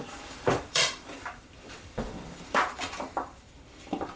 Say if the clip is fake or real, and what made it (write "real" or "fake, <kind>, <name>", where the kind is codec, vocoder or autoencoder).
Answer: fake, vocoder, BigVGAN v2